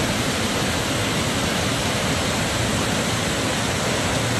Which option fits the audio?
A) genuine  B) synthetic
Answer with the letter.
A